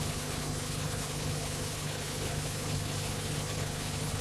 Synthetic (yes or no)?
yes